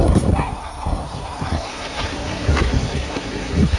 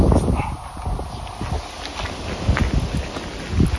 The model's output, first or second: first